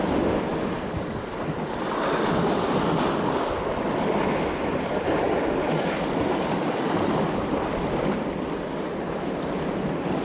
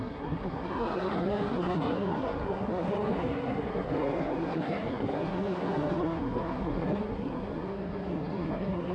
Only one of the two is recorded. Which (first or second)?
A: first